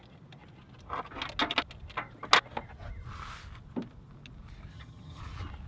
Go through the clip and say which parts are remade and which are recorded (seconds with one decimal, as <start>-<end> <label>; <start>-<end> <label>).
0.0-4.7 recorded; 4.7-5.2 remade; 5.2-5.7 recorded